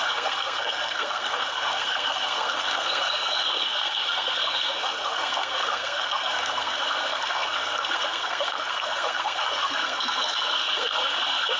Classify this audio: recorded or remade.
remade